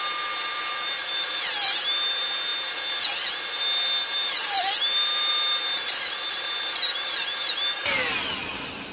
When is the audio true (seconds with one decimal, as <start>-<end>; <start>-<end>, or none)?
0.0-8.9